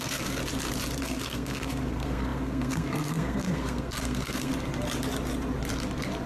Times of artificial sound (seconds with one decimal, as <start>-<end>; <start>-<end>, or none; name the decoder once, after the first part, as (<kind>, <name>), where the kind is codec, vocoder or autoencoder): 0.0-0.4 (codec, SNAC); 1.0-4.5